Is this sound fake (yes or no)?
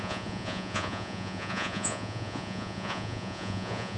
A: yes